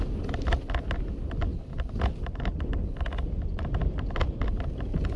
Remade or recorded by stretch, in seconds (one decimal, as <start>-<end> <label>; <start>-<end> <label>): 0.0-5.2 recorded